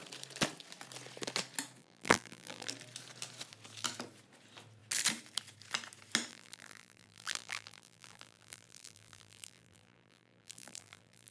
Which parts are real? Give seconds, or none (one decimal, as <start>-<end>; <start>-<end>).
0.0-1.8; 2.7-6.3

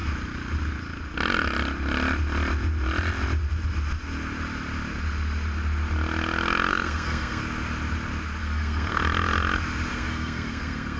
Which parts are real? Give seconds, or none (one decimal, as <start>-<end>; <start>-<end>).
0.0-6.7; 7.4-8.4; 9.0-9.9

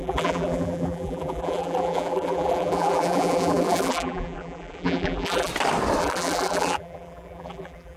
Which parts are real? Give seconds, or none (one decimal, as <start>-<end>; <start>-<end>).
5.5-6.0

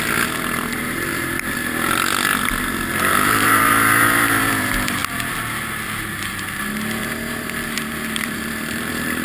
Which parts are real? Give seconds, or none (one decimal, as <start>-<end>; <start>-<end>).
2.3-3.0; 5.0-7.0

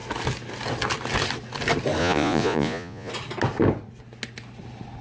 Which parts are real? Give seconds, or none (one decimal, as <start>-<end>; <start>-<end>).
0.0-2.0; 3.1-5.0

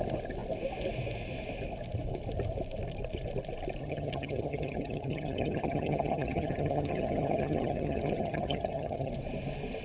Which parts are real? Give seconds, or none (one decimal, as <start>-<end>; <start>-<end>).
0.0-3.8; 9.1-9.8

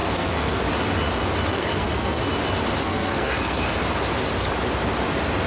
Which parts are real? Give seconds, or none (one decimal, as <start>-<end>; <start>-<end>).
0.6-1.5; 2.2-2.8; 3.7-5.5

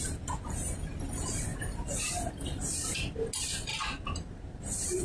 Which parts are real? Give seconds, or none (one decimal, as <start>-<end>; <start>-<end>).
0.0-5.0